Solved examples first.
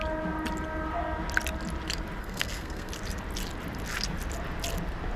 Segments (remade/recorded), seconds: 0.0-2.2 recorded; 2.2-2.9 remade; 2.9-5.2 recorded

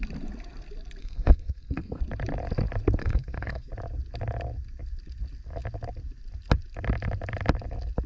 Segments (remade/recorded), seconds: 0.0-1.0 recorded; 1.0-2.0 remade; 2.0-3.0 recorded; 3.0-3.7 remade; 3.7-8.1 recorded

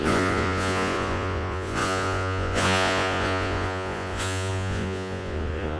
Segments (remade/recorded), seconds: 0.0-5.8 remade

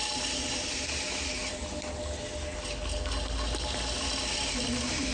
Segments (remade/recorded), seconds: 0.0-5.1 recorded